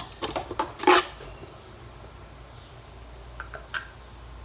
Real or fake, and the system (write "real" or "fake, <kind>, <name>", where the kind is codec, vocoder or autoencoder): real